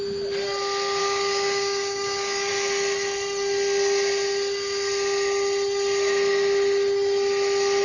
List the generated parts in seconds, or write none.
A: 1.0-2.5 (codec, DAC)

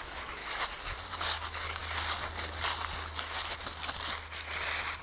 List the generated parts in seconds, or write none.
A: 0.0-0.4 (codec, DAC); 1.0-1.8